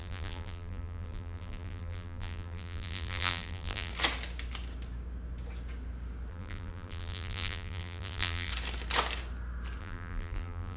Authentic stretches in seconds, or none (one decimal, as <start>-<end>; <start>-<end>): 3.9-6.3; 8.5-9.8